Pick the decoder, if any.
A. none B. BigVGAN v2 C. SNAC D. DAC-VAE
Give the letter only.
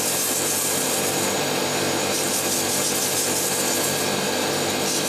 A